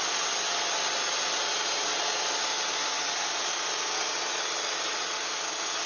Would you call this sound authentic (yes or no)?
yes